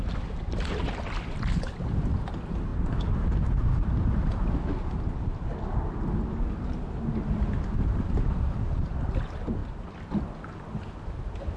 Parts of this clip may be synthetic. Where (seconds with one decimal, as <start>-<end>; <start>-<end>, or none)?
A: 9.6-10.1